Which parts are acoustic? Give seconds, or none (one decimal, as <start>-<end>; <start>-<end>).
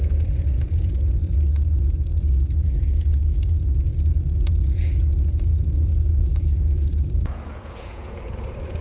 1.2-2.6; 3.9-4.5